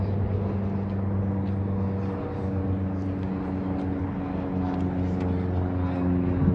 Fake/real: real